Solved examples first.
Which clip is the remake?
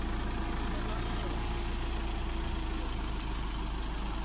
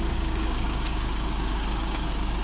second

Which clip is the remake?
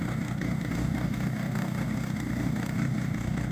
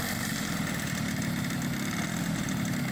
first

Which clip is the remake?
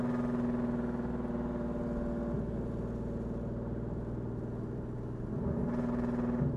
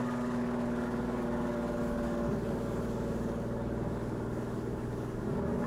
second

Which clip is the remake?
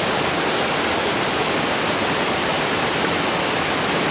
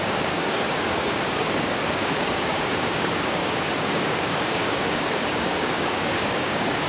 second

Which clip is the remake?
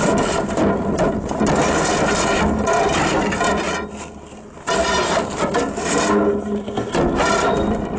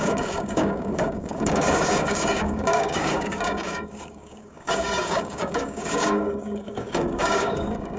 second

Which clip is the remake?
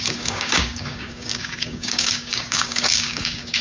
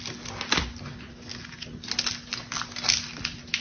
first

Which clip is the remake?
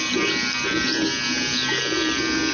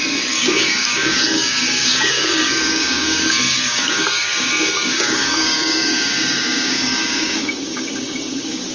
second